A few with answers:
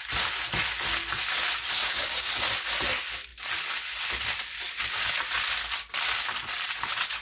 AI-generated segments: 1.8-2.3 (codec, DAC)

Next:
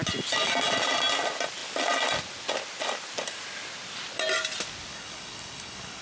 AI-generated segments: 4.9-6.0 (codec, DAC)

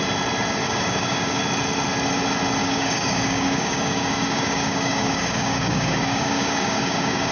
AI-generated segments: 0.6-1.4 (codec, DAC); 2.6-7.3

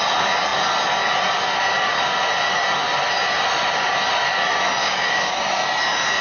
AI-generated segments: 4.8-5.4 (codec, DAC)

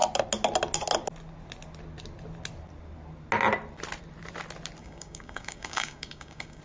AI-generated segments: 4.8-6.6 (codec, DAC)

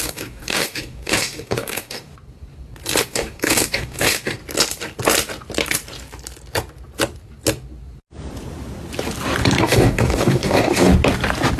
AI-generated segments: 0.0-2.1 (codec, DAC); 3.0-4.4; 9.6-10.9